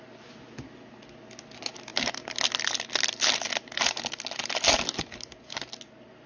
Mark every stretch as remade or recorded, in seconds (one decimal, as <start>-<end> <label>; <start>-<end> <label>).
0.0-6.3 recorded